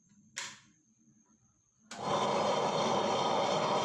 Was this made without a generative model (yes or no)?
yes